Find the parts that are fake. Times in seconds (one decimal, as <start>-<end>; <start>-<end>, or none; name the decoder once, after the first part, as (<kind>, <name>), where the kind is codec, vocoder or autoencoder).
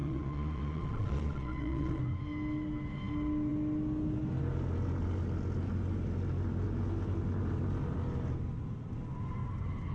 0.0-2.0 (vocoder, Vocos)